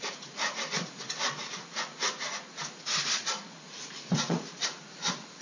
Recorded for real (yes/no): no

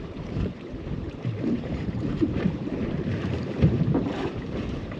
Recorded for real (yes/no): no